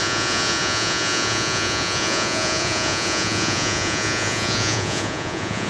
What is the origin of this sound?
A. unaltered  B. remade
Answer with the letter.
B